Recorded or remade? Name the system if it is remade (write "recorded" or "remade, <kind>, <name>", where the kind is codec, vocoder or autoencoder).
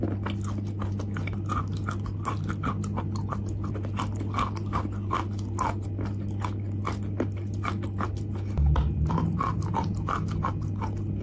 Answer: recorded